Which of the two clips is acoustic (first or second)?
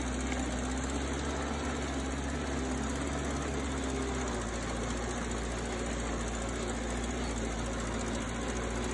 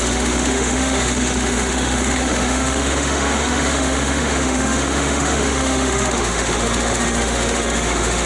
first